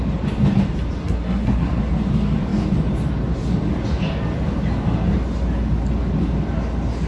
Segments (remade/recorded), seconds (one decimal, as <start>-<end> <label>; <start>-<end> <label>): 0.0-1.0 recorded; 1.0-1.8 remade; 1.8-7.1 recorded